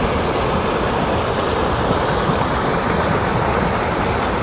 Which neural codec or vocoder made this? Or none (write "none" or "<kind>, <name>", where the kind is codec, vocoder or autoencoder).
none